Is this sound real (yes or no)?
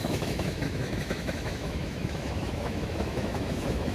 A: no